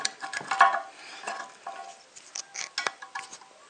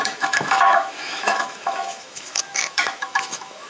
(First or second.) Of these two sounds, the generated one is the second